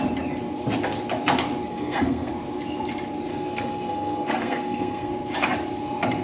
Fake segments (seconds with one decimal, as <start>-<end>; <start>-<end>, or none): 1.7-2.3; 3.3-5.1